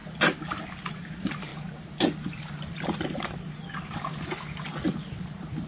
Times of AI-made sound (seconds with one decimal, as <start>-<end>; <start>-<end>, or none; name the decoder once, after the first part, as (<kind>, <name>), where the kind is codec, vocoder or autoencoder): 0.9-1.5 (vocoder, BigVGAN v2); 2.2-4.1